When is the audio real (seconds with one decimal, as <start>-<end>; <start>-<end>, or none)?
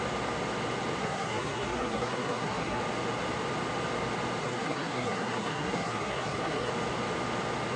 0.0-1.0; 2.8-4.4; 6.7-7.8